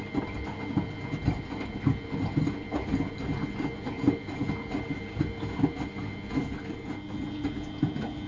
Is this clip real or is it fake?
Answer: real